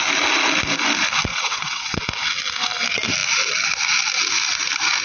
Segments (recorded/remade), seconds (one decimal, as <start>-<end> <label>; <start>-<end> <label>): 0.0-1.3 recorded; 1.3-2.0 remade; 2.0-5.0 recorded